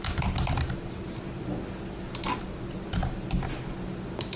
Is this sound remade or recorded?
recorded